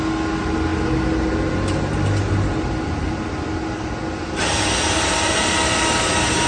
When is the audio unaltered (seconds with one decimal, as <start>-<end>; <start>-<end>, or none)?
0.0-6.5